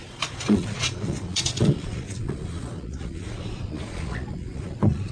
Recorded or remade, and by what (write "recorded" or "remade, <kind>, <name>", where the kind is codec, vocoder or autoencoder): remade, vocoder, Vocos